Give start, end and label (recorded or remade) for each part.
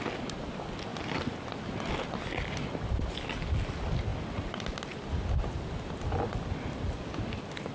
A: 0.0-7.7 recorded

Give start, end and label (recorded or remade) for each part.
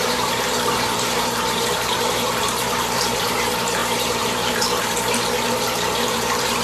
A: 0.0-6.6 remade